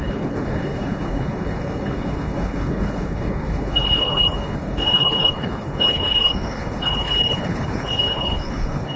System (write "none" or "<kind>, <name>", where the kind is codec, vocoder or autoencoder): codec, HILCodec